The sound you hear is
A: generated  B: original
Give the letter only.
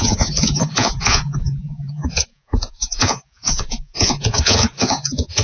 A